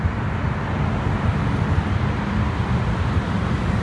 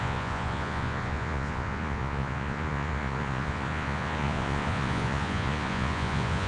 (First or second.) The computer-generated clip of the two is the second